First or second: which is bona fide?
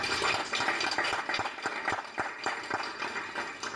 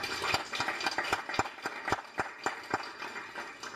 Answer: second